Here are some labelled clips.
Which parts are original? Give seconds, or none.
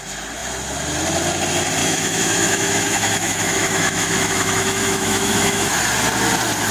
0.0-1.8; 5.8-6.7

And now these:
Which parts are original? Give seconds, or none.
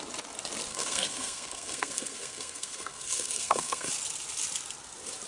0.0-0.7; 3.9-5.3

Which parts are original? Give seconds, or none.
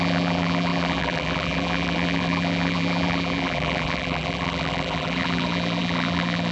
none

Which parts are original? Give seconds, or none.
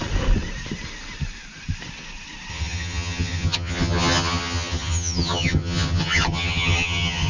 0.0-2.5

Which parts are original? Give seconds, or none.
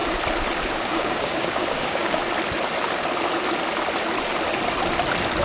0.0-0.7; 2.2-5.4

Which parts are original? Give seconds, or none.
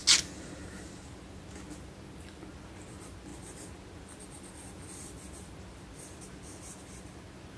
0.0-7.6